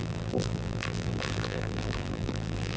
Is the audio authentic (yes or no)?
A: no